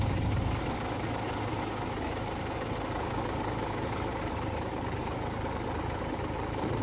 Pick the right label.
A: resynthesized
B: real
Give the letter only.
A